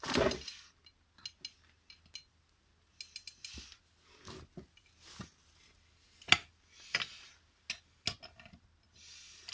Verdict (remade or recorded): recorded